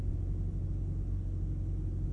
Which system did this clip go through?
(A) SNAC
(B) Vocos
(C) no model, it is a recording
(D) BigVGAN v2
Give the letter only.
C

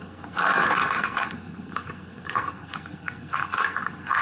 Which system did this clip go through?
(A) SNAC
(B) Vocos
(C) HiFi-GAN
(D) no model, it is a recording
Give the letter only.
A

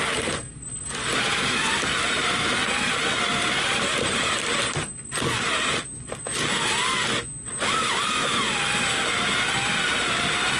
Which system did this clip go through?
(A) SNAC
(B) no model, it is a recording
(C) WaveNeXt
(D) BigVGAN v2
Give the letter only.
B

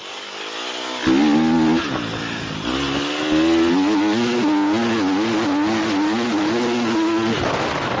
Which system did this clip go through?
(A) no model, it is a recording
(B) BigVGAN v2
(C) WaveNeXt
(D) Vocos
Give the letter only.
A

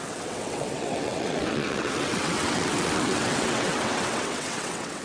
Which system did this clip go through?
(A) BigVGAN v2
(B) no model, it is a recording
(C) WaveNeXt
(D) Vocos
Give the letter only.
C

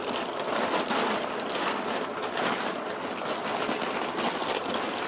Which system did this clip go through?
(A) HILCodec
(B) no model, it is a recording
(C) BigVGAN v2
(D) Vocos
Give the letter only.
B